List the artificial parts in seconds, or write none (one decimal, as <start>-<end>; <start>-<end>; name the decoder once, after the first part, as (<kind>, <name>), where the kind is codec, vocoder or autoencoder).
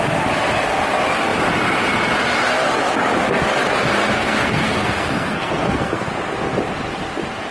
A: 4.2-6.1 (codec, SNAC)